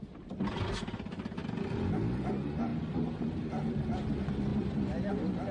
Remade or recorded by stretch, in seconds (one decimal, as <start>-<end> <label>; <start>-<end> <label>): 0.0-5.5 recorded